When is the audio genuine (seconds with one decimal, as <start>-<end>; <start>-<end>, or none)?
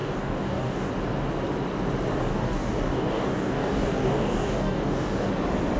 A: 0.9-2.3; 5.3-5.8